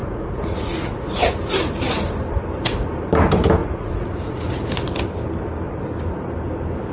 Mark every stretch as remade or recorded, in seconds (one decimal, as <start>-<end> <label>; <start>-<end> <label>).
0.0-1.3 remade; 1.3-3.6 recorded; 3.6-4.5 remade; 4.5-6.9 recorded